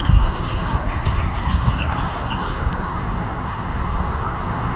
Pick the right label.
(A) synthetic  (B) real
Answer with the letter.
A